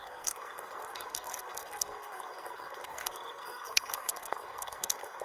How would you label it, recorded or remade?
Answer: remade